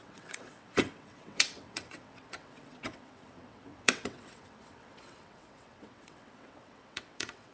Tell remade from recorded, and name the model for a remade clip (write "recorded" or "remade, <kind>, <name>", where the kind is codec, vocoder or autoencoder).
remade, vocoder, WaveNeXt